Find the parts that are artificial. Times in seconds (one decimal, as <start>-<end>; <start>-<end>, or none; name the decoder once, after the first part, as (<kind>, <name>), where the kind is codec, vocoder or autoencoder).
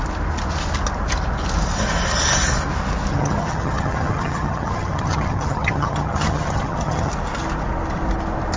3.1-7.1 (vocoder, HiFi-GAN)